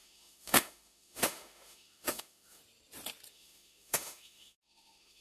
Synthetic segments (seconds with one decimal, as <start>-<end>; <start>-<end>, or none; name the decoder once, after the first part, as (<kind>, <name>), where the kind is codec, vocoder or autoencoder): 0.0-2.6 (autoencoder, DAC-VAE); 3.3-5.2